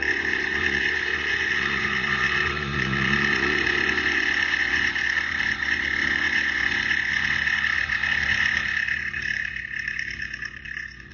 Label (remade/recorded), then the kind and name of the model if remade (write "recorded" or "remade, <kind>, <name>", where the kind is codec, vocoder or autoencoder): remade, vocoder, Vocos